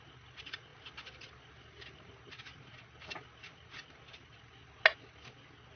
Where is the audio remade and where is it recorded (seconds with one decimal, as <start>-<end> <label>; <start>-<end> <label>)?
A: 0.0-5.8 recorded